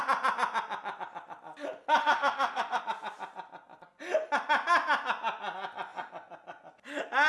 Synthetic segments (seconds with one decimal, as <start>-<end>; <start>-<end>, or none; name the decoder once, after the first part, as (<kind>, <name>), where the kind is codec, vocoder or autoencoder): 2.0-2.8 (autoencoder, DAC-VAE)